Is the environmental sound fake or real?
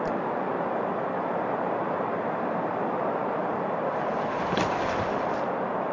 fake